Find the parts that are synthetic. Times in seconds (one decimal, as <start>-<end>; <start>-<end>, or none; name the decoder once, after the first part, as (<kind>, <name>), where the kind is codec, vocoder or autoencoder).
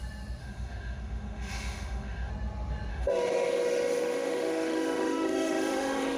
0.4-2.3 (autoencoder, DAC-VAE); 2.9-6.2